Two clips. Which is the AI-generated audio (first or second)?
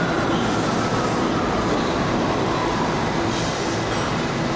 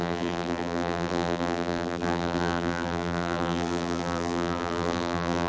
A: second